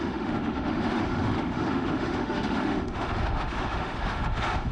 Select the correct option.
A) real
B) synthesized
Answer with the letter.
B